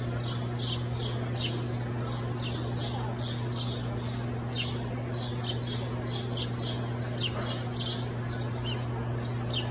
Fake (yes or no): no